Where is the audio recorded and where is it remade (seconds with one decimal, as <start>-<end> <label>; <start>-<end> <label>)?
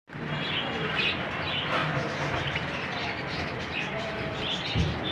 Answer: 0.0-0.9 recorded; 0.9-5.1 remade